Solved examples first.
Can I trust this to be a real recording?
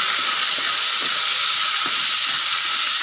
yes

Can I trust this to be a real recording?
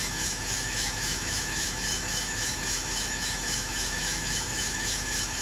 no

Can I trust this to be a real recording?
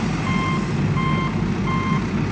yes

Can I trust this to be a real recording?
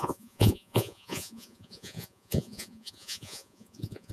no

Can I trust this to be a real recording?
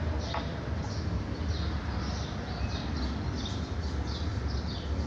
yes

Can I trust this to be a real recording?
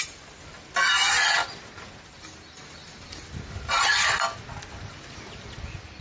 yes